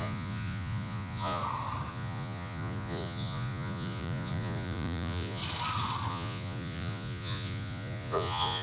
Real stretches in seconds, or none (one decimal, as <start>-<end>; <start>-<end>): 1.4-1.9; 5.4-6.1